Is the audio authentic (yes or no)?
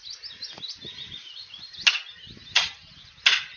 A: yes